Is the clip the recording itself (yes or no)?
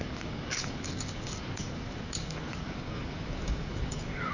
no